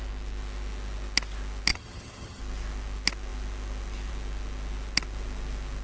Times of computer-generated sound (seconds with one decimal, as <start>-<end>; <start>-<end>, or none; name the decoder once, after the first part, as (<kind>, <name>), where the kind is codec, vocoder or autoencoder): 1.7-2.4 (vocoder, HiFi-GAN)